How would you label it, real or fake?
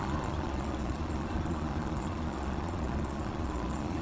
fake